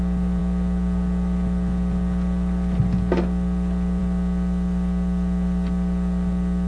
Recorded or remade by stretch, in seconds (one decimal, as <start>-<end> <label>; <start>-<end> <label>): 0.0-6.7 recorded